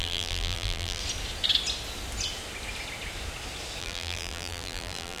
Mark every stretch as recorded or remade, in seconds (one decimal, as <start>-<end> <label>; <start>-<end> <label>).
0.0-1.0 remade; 1.0-3.8 recorded; 3.8-5.2 remade